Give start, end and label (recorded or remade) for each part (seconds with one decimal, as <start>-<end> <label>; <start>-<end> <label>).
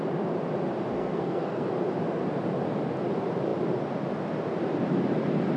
0.0-0.9 recorded; 0.9-1.7 remade; 1.7-5.6 recorded